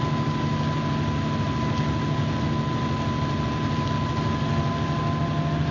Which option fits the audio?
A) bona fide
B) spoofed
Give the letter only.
A